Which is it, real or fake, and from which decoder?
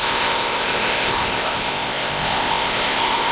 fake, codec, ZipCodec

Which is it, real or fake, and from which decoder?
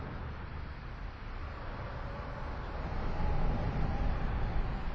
real